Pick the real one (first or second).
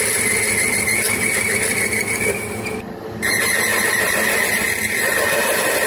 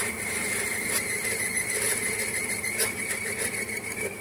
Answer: first